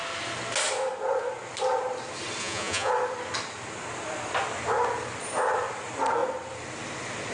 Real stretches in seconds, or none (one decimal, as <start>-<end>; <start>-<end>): 0.0-2.4; 2.9-7.3

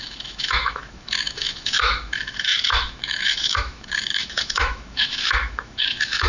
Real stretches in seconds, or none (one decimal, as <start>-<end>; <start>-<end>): none

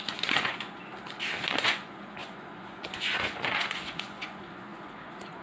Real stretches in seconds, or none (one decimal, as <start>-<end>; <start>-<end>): 0.9-1.5